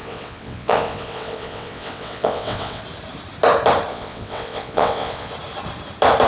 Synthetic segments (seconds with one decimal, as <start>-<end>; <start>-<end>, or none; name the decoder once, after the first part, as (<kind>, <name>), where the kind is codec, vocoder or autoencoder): 0.0-2.8 (vocoder, WaveNeXt); 3.9-5.3